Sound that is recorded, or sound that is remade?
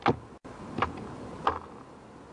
recorded